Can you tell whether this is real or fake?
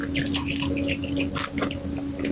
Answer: real